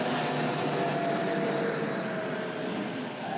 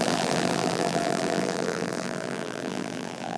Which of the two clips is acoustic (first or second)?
first